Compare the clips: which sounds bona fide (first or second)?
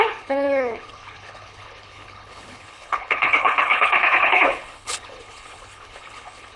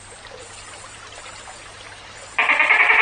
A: second